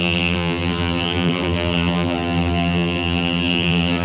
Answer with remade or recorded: remade